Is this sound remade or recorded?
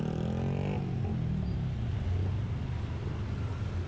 recorded